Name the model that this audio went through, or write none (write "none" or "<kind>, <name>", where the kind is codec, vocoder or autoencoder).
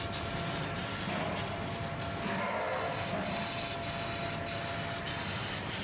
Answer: none